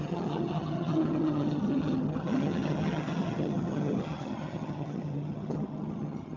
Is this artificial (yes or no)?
yes